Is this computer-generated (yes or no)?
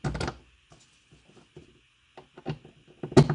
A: no